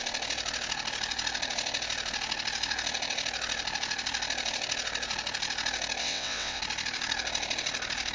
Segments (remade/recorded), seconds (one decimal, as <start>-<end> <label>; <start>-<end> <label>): 0.0-6.0 recorded; 6.0-6.6 remade; 6.6-8.1 recorded